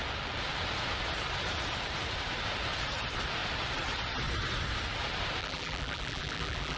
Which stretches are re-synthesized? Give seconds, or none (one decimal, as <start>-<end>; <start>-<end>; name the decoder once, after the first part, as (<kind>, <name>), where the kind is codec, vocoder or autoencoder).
5.4-6.8 (vocoder, BigVGAN v2)